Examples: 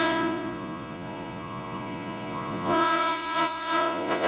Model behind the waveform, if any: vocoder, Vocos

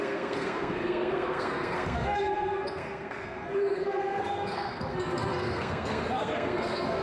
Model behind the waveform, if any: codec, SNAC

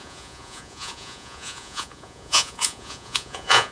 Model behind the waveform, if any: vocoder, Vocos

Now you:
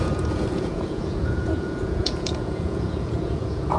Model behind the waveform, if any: vocoder, Vocos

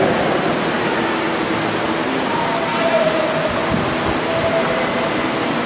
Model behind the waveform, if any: none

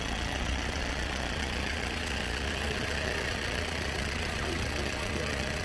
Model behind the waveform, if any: vocoder, Vocos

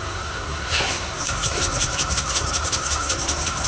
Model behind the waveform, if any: codec, SNAC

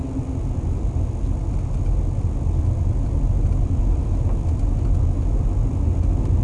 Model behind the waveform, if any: none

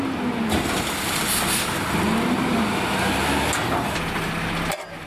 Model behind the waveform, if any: none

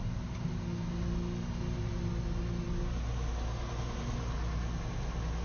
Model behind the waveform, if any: none